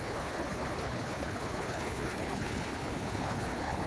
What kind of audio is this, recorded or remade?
remade